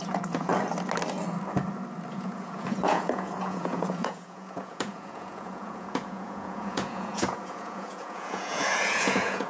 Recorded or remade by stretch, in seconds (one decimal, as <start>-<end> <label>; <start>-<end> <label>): 0.0-0.5 remade; 0.5-2.1 recorded; 2.1-9.5 remade